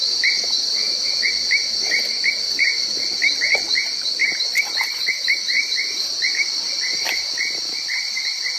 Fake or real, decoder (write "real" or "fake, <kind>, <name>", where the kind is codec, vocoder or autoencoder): real